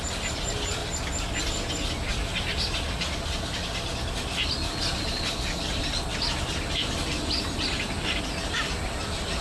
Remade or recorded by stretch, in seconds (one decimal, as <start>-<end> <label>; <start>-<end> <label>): 0.0-9.4 recorded